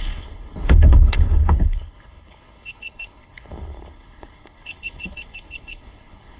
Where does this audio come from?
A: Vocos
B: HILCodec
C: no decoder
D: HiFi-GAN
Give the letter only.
B